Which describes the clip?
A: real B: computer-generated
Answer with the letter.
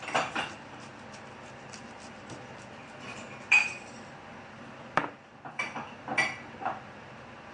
B